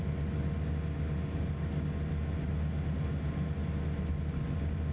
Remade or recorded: recorded